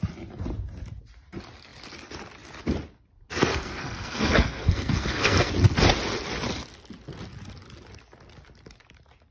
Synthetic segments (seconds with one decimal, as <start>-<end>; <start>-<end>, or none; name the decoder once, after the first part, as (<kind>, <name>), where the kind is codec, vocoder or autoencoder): 3.5-5.5 (codec, SNAC)